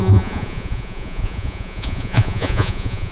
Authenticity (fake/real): fake